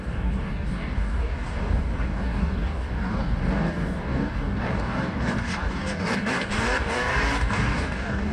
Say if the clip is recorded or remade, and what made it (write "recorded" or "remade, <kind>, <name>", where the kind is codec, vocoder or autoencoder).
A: remade, codec, DAC